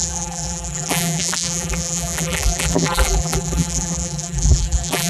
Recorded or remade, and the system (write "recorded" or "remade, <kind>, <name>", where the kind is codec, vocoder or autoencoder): remade, vocoder, BigVGAN v2